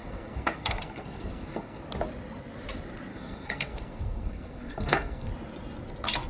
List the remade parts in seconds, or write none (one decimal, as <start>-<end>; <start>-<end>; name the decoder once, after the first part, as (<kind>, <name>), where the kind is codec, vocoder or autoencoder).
0.0-1.8 (codec, SNAC); 3.1-5.3